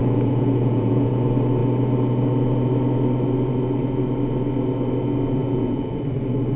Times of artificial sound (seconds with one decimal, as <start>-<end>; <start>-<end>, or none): 0.0-1.1; 5.4-6.0